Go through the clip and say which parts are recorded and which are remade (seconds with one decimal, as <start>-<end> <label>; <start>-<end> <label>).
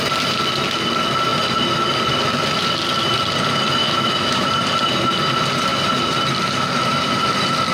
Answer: 0.0-3.8 recorded; 3.8-4.5 remade; 4.5-7.7 recorded